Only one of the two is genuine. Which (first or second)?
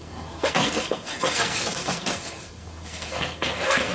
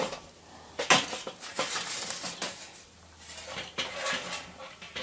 second